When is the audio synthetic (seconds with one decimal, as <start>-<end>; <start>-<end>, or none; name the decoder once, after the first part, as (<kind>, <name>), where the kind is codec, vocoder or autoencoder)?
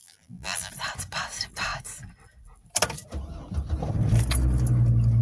0.0-0.7 (vocoder, BigVGAN v2)